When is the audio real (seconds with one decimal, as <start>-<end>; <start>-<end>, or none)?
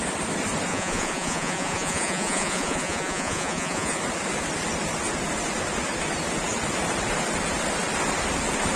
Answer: 0.0-0.7; 4.0-8.8